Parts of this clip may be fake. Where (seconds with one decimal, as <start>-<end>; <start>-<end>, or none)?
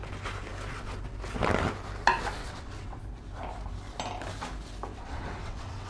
2.4-3.0; 4.9-5.9